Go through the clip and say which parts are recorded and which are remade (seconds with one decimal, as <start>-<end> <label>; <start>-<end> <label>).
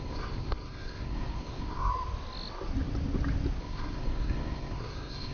0.0-1.9 remade; 1.9-3.6 recorded; 3.6-5.3 remade